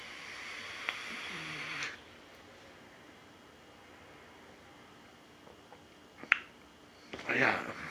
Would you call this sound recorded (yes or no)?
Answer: yes